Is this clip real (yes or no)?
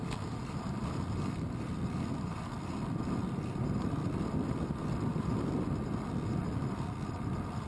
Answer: yes